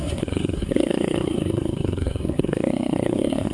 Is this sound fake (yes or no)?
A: yes